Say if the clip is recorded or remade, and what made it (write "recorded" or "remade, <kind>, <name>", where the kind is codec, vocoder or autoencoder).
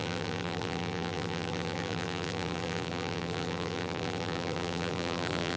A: remade, vocoder, BigVGAN v2